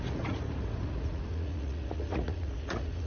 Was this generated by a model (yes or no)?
yes